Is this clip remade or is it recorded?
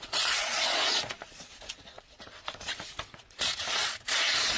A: remade